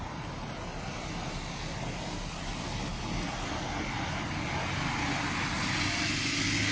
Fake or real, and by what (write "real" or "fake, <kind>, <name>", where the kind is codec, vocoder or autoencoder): real